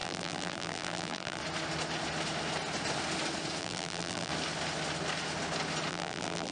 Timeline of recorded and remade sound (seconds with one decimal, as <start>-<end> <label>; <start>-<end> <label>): 0.0-1.4 remade; 1.4-3.6 recorded; 3.6-4.3 remade; 4.3-5.9 recorded; 5.9-6.5 remade